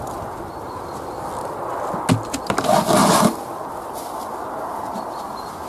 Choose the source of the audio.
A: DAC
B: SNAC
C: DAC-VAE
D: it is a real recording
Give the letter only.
D